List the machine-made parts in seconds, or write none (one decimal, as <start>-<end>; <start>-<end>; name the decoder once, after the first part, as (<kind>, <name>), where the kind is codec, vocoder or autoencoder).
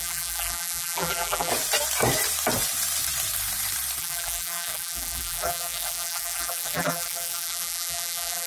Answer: 0.0-1.5 (vocoder, BigVGAN v2); 4.0-8.5